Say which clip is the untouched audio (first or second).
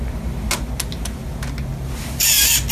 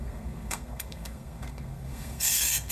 first